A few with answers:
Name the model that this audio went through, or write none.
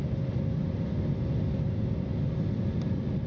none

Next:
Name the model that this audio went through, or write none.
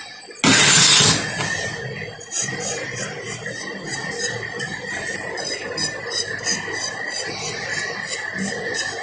none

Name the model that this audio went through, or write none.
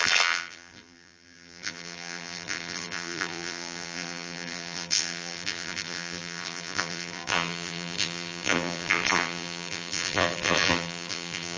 vocoder, BigVGAN v2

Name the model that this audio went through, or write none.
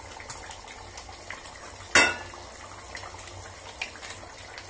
none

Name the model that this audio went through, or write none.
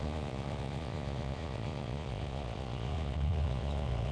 vocoder, Vocos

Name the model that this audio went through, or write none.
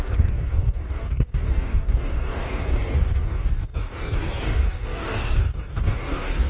codec, DAC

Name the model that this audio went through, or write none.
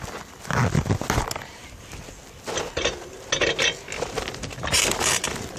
none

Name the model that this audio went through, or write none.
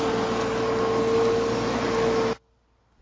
none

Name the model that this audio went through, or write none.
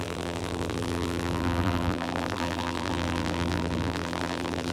vocoder, BigVGAN v2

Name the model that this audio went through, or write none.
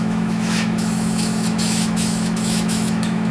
autoencoder, DAC-VAE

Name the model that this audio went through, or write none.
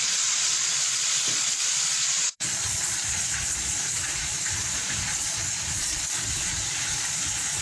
vocoder, Vocos